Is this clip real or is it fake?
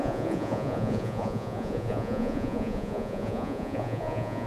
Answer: fake